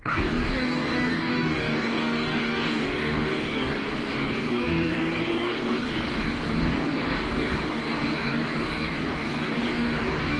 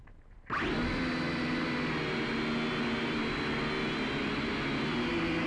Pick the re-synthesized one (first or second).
first